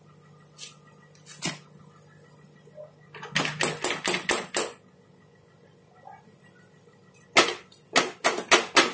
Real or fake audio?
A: real